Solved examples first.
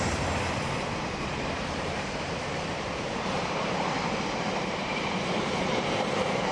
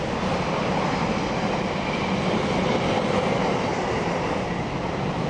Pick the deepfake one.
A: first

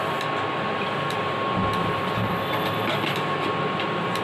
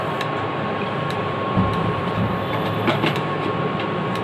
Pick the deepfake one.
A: second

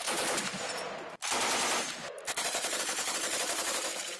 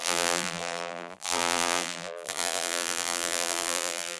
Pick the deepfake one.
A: second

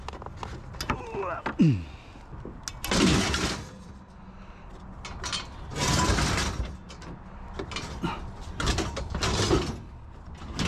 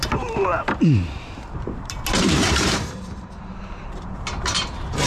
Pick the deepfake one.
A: second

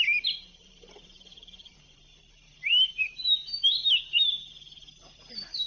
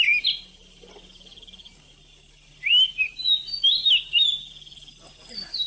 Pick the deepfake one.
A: first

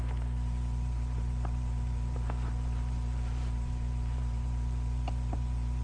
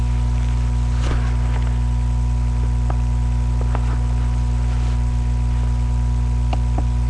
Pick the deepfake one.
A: first